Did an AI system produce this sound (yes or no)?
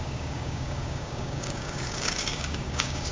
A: yes